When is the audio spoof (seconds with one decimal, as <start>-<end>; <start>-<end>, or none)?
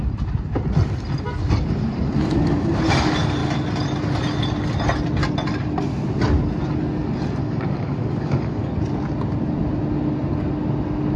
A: 7.4-8.7